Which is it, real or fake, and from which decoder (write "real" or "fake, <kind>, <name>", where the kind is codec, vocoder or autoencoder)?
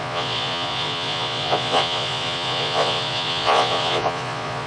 fake, vocoder, Vocos